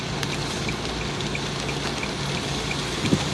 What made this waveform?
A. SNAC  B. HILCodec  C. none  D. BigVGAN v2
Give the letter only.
C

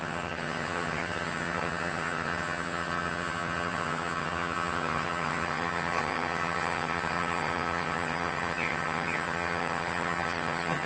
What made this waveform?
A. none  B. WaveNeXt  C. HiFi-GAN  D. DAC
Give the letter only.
C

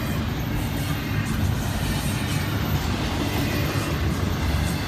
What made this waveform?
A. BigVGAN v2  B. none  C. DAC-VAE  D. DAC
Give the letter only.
B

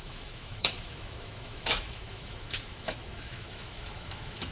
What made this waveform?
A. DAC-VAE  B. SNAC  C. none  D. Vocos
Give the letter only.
A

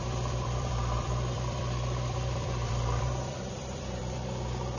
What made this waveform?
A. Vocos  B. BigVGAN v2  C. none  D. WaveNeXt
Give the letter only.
B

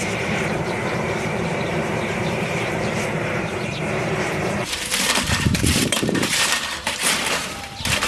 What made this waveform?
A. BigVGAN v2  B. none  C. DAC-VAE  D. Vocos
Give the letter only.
A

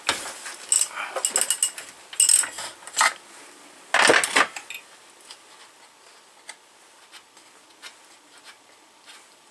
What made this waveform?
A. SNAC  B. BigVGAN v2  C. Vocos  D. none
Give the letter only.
D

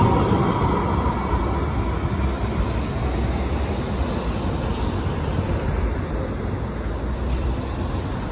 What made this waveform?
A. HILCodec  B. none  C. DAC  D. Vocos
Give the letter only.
B